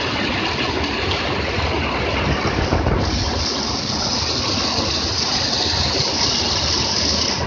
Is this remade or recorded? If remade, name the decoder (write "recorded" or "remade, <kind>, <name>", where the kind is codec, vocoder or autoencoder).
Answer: recorded